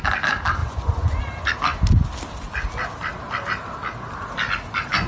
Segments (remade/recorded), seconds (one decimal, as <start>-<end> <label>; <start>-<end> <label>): 0.0-0.6 recorded; 0.6-1.2 remade; 1.2-5.1 recorded

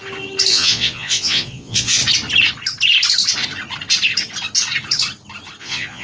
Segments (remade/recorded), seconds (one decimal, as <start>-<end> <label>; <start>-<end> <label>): 0.0-0.5 recorded; 0.5-2.0 remade; 2.0-5.6 recorded; 5.6-6.0 remade